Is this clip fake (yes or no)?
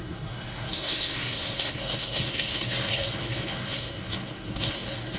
yes